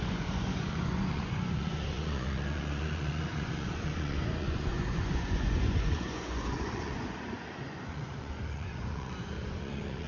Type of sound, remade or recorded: remade